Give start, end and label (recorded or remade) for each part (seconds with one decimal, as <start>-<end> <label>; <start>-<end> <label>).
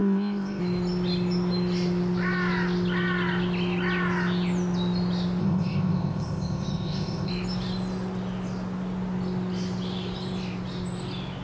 0.0-0.6 remade; 0.6-5.4 recorded; 5.4-7.3 remade; 7.3-11.4 recorded